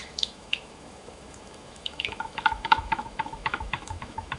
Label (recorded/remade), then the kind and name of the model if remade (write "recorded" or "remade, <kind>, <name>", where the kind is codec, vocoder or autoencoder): remade, autoencoder, DAC-VAE